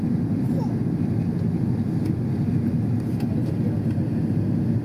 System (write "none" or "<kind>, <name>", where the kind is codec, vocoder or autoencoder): none